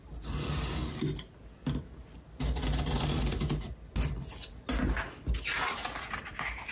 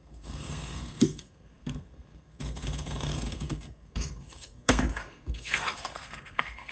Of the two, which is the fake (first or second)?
second